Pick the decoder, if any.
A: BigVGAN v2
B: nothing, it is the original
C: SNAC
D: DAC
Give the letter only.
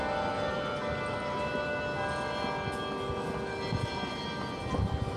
B